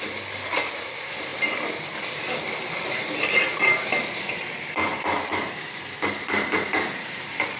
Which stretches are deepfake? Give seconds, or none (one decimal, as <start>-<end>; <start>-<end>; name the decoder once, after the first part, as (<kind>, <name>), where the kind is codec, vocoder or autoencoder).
4.9-7.6 (vocoder, BigVGAN v2)

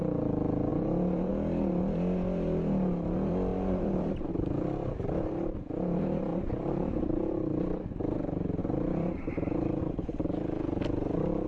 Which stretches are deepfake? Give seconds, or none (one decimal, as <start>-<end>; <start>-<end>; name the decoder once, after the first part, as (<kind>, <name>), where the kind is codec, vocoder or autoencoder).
0.7-1.3 (vocoder, BigVGAN v2); 3.5-4.3; 6.3-7.6; 8.6-9.8

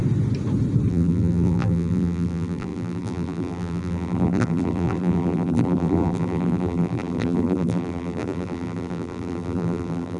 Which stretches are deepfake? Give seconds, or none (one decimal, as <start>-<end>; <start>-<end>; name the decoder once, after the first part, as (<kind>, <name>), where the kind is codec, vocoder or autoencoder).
0.9-10.2 (vocoder, BigVGAN v2)

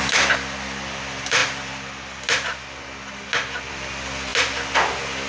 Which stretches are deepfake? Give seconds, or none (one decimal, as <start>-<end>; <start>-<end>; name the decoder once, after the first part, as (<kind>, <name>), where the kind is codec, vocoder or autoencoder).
0.0-1.4 (vocoder, BigVGAN v2); 3.7-4.3

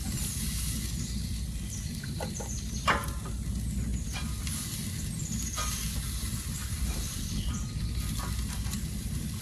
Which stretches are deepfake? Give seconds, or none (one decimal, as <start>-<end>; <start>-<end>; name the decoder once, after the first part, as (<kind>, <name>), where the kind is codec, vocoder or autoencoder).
1.9-2.7 (vocoder, BigVGAN v2); 6.6-7.8

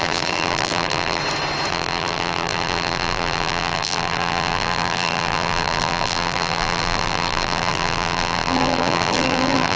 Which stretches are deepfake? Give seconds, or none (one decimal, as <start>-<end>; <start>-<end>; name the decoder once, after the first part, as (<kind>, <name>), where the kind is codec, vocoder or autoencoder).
0.0-1.2 (vocoder, BigVGAN v2); 1.7-9.8